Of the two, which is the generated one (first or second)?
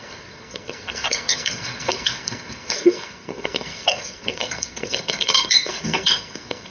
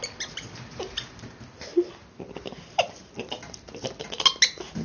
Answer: first